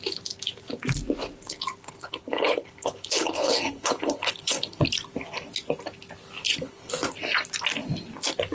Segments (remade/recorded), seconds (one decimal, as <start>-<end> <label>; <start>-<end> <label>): 0.0-1.8 recorded; 1.8-4.8 remade; 4.8-6.4 recorded; 6.4-6.9 remade; 6.9-8.5 recorded